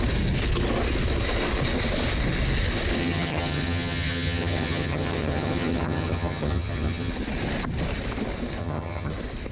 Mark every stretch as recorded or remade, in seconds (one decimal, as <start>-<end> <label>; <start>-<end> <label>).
0.0-3.0 recorded; 3.0-7.1 remade; 7.1-8.6 recorded; 8.6-9.1 remade; 9.1-9.5 recorded